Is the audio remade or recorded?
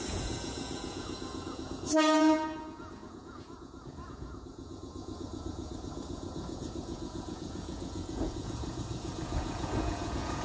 remade